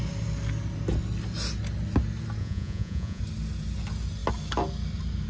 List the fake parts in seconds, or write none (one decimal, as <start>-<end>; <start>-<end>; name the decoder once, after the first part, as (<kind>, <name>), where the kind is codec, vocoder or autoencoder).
2.4-3.2 (vocoder, Vocos)

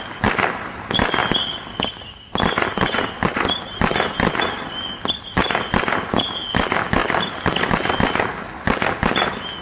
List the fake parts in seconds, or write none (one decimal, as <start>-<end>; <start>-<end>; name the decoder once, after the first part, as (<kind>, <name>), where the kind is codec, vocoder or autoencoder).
7.0-7.9 (vocoder, BigVGAN v2)

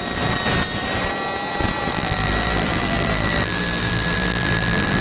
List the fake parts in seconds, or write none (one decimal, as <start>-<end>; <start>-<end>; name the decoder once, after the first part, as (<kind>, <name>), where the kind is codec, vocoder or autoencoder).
1.9-5.0 (vocoder, BigVGAN v2)